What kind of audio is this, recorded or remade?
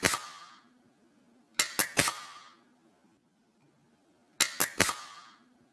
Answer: recorded